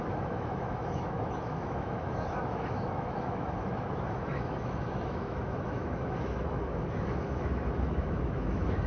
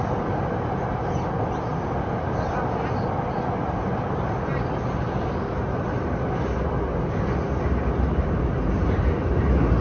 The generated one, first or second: first